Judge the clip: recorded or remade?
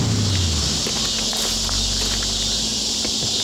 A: recorded